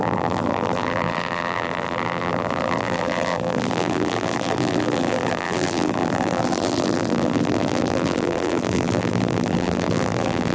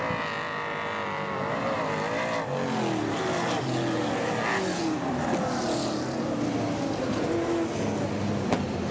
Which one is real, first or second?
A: second